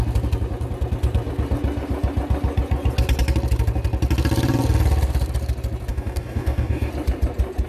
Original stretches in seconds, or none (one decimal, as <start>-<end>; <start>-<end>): 0.0-5.9; 6.9-7.7